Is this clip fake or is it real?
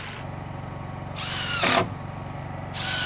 real